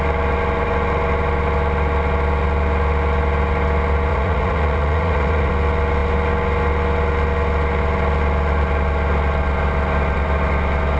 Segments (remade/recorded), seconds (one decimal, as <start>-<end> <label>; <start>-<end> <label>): 0.0-4.1 recorded; 4.1-5.5 remade; 5.5-11.0 recorded